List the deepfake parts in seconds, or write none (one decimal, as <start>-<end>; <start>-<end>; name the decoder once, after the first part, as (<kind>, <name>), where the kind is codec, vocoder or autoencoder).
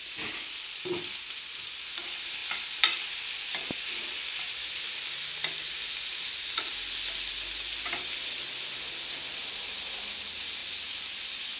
none